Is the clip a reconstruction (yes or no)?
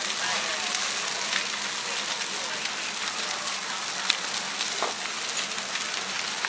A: no